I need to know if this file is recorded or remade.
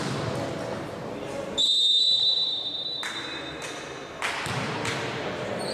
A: recorded